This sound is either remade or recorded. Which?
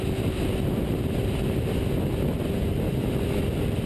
recorded